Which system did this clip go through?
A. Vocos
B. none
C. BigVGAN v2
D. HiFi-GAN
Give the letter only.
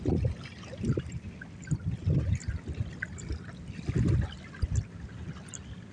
B